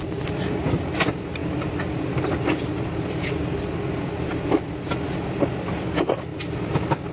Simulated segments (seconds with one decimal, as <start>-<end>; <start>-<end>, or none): none